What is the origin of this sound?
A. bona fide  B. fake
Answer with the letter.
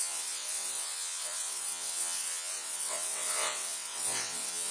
B